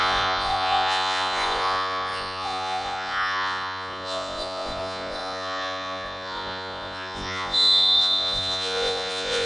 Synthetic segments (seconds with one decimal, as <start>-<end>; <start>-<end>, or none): 0.0-9.5